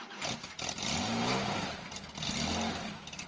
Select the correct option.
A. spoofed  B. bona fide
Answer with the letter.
B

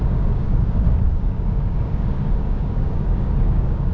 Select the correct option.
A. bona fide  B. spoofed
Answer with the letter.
B